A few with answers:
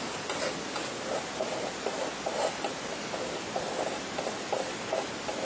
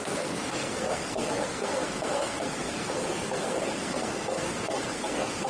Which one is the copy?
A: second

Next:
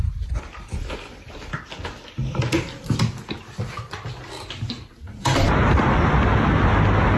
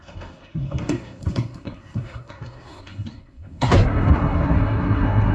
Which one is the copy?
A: second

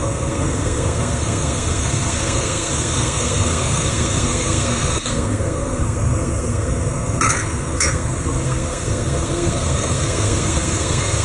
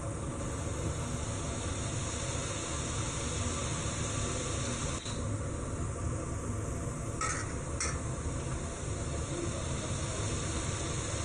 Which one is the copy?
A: first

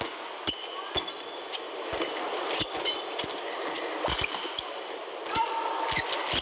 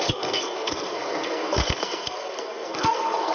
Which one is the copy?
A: second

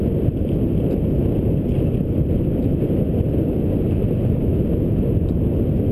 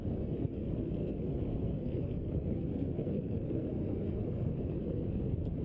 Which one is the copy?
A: second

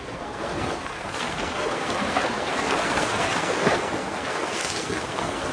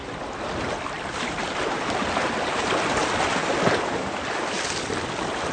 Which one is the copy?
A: first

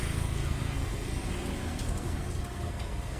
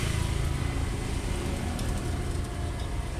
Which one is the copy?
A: first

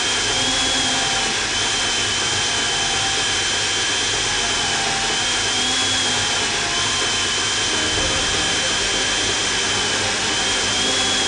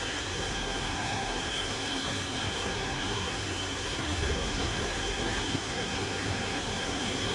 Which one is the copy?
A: second